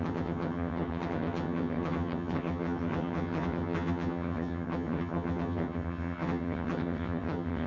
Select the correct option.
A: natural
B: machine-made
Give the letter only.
B